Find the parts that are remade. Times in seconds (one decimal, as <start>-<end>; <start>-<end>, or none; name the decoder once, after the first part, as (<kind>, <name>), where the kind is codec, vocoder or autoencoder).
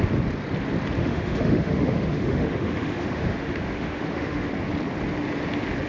1.0-4.5 (autoencoder, DAC-VAE)